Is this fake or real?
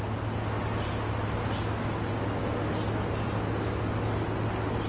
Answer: real